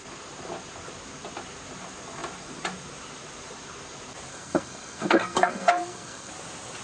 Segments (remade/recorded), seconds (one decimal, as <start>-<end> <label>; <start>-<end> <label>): 0.0-4.3 recorded; 4.3-6.3 remade; 6.3-6.8 recorded